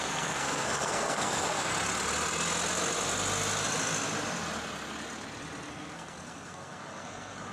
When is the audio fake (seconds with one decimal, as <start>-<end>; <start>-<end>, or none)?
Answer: 0.0-1.7; 5.7-7.5